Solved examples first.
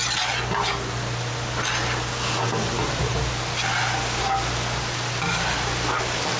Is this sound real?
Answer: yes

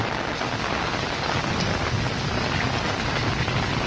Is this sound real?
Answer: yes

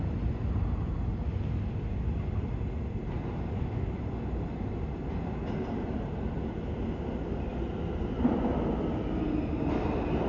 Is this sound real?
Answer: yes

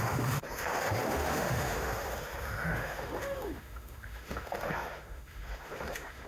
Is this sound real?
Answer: no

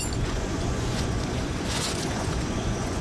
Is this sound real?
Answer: no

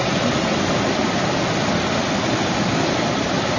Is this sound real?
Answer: yes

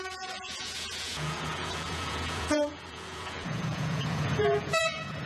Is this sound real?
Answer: no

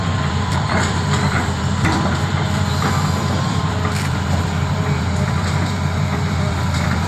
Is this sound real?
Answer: no